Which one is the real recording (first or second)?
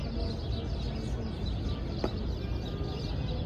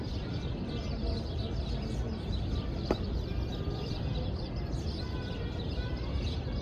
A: first